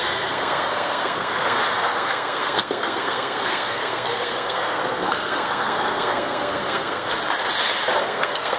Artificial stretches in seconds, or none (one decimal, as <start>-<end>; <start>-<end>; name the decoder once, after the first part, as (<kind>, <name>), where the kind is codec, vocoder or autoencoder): 0.0-7.1 (codec, SNAC); 8.0-8.6